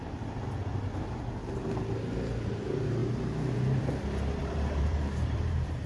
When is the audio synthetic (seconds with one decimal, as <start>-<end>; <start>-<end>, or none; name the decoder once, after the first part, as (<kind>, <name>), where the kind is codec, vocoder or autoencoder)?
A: 3.0-3.8 (vocoder, BigVGAN v2); 4.4-5.9